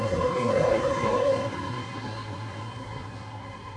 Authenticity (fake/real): fake